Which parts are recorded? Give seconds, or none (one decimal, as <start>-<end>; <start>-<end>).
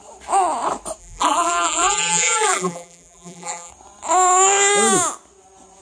0.0-1.0; 3.7-5.8